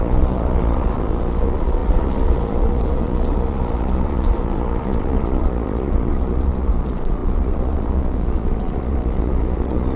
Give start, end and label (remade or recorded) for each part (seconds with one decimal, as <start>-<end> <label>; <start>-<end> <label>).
0.0-10.0 remade